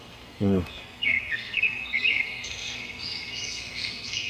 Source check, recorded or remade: remade